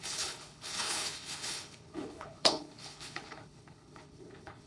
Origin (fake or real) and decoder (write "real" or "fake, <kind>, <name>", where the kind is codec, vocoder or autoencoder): fake, codec, HILCodec